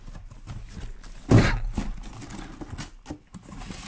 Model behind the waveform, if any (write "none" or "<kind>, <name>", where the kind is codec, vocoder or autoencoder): none